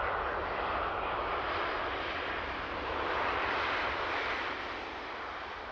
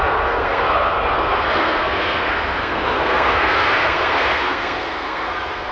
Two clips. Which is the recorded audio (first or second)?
first